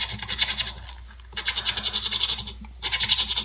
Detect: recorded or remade recorded